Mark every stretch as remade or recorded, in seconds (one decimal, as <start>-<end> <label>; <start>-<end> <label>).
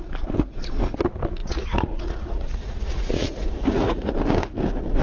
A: 0.0-1.4 recorded; 1.4-4.1 remade; 4.1-5.0 recorded